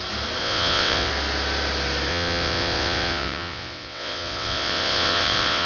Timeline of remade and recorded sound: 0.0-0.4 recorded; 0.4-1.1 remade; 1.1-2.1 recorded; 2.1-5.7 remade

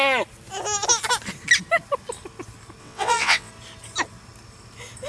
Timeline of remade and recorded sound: 0.0-2.8 recorded; 2.8-3.5 remade; 3.5-5.1 recorded

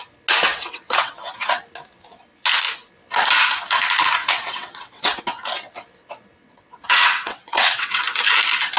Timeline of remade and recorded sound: 0.0-0.5 recorded; 0.5-1.1 remade; 1.1-4.2 recorded; 4.2-5.2 remade; 5.2-6.4 recorded; 6.4-8.0 remade; 8.0-8.8 recorded

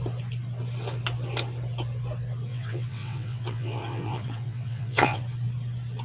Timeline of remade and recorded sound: 0.0-2.5 recorded; 2.5-5.2 remade; 5.2-6.0 recorded

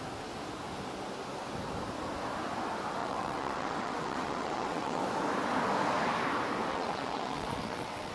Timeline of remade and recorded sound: 0.0-3.0 recorded; 3.0-5.0 remade; 5.0-6.7 recorded; 6.7-8.1 remade

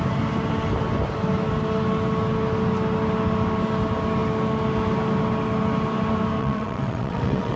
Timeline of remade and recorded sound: 0.0-6.4 recorded; 6.4-7.6 remade

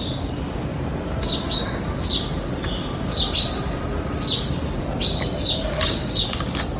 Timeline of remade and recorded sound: 0.0-6.8 recorded

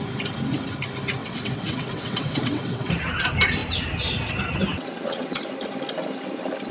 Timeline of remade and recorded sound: 0.0-1.2 recorded; 1.2-2.9 remade; 2.9-4.7 recorded; 4.7-5.4 remade; 5.4-6.7 recorded